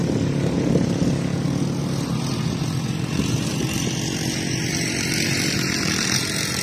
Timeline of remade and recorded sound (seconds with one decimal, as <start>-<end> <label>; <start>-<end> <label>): 0.0-6.6 recorded